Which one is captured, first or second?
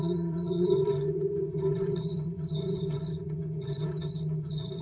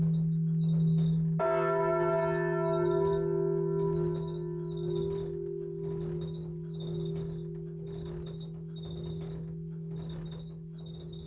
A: second